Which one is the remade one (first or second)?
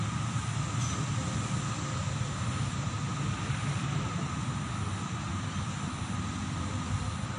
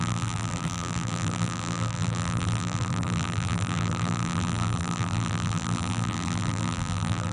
second